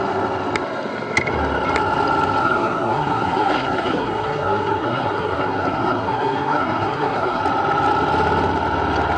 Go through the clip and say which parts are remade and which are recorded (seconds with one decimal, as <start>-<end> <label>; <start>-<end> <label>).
0.0-2.4 recorded; 2.4-7.4 remade; 7.4-9.2 recorded